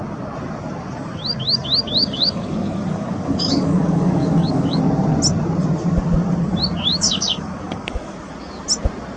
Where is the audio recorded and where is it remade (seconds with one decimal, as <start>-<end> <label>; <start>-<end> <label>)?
0.0-2.0 recorded; 2.0-4.8 remade; 4.8-6.9 recorded; 6.9-8.3 remade; 8.3-9.2 recorded